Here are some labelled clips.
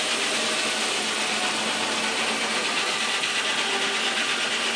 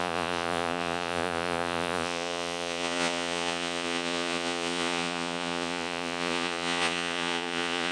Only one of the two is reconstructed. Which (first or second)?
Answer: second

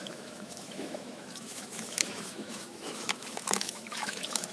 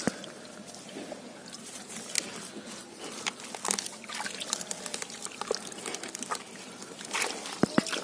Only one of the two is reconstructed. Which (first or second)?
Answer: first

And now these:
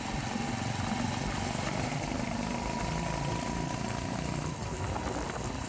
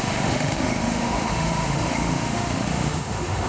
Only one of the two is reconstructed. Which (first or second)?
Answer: second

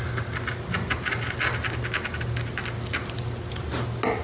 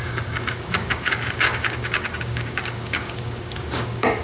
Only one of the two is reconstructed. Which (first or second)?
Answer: second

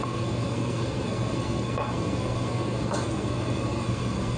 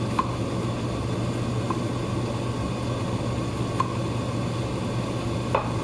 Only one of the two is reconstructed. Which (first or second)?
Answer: first